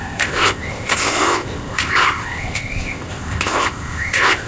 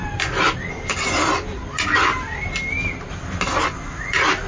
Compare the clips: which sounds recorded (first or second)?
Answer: second